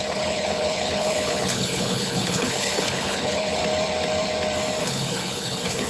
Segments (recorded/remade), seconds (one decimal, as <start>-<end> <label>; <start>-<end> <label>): 0.0-3.6 remade; 3.6-4.8 recorded; 4.8-5.9 remade